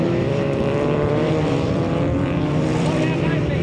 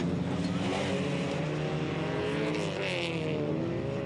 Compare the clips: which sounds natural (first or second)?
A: second